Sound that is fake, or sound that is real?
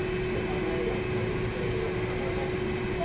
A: real